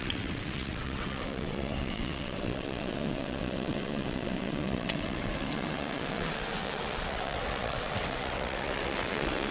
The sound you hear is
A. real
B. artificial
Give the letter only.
B